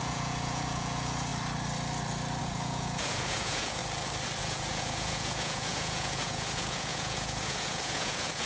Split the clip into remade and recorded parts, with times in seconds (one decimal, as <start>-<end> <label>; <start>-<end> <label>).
0.0-1.3 remade; 1.3-2.4 recorded; 2.4-3.8 remade; 3.8-4.4 recorded; 4.4-8.5 remade